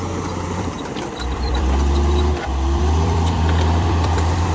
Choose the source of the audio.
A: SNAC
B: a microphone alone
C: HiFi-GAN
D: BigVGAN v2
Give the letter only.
D